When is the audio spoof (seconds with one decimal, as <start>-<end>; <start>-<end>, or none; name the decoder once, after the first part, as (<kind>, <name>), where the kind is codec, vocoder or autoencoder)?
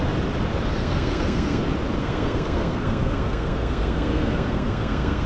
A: 0.8-1.6 (codec, SNAC); 2.0-5.3